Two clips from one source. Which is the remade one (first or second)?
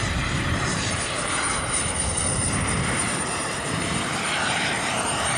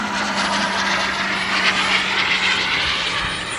first